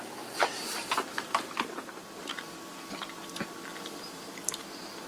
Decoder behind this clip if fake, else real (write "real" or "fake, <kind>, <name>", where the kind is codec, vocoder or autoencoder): real